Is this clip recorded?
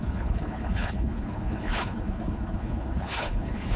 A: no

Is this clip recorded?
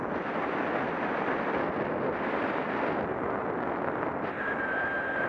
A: yes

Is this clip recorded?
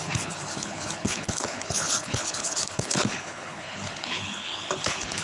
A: no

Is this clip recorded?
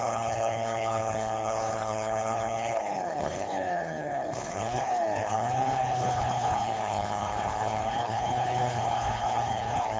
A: no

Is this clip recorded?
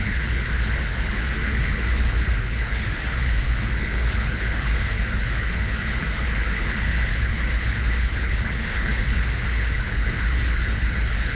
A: no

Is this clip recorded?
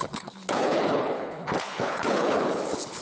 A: no